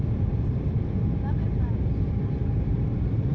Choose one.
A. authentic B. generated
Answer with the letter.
A